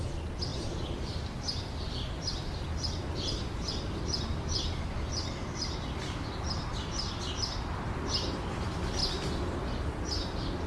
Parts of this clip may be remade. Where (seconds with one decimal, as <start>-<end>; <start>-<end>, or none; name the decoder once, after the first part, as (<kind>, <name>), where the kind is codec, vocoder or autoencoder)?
none

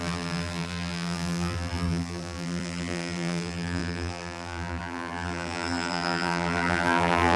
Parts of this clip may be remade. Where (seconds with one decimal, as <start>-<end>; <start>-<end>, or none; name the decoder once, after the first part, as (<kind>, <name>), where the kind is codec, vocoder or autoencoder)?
0.0-7.4 (vocoder, BigVGAN v2)

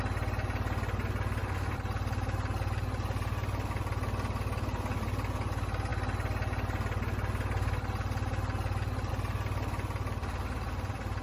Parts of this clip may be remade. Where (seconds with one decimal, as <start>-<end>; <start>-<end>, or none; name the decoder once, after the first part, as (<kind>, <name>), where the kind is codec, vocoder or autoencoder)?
none

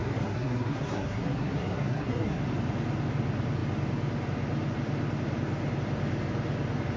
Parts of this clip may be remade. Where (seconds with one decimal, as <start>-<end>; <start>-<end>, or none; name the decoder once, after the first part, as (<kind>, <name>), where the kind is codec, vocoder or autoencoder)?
0.0-2.4 (codec, SNAC)

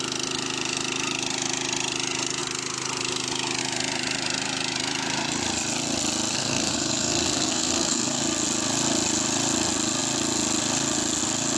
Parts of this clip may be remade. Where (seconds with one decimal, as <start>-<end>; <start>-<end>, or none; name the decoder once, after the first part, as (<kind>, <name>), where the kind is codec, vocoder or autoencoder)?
6.3-8.2 (codec, SNAC)

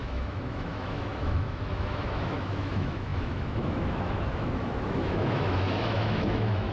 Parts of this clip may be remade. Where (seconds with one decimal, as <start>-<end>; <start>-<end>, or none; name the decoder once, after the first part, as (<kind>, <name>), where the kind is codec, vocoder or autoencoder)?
0.0-6.7 (autoencoder, DAC-VAE)

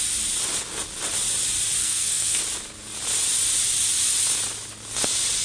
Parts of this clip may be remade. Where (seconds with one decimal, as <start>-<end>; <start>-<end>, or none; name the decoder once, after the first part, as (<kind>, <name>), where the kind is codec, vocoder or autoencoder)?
1.8-2.4 (codec, SNAC)